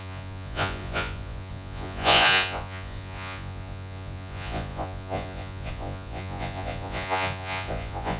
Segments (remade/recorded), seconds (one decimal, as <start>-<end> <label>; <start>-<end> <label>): 0.0-8.2 remade